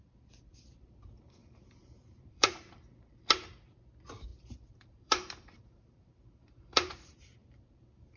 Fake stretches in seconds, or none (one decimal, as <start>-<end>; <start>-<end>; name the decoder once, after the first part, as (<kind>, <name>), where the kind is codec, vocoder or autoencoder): 1.4-3.5 (vocoder, BigVGAN v2); 4.3-8.2